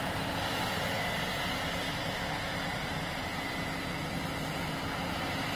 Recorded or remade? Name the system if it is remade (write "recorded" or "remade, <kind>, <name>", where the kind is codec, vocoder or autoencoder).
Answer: recorded